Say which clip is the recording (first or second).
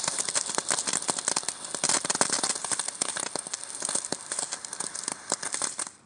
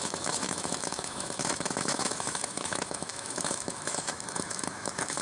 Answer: first